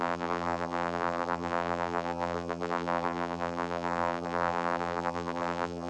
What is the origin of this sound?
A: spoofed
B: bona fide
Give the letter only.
A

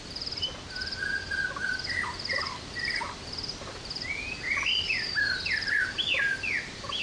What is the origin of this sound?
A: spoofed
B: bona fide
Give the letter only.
A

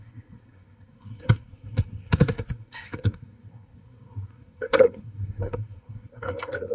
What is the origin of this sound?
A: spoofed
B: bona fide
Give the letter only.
A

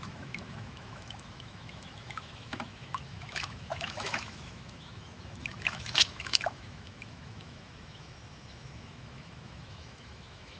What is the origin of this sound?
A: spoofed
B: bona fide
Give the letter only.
A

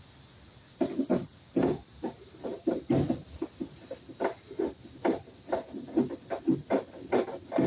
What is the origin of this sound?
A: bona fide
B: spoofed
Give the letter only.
A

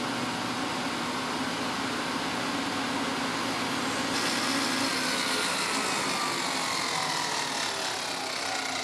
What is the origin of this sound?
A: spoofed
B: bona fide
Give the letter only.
B